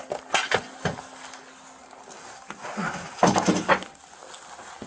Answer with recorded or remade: recorded